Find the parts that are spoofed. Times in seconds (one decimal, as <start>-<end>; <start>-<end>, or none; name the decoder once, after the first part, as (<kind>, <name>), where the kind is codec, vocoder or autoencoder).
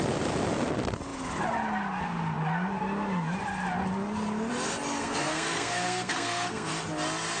5.0-6.7 (codec, SNAC)